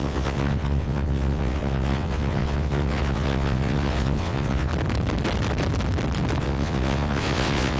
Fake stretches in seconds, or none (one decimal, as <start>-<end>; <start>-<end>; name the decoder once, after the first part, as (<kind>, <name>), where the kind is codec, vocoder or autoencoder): 0.0-4.7 (vocoder, WaveNeXt); 6.4-7.8